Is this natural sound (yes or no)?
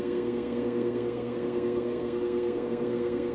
no